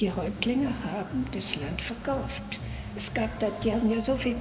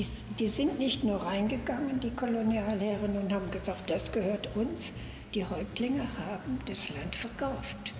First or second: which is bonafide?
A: second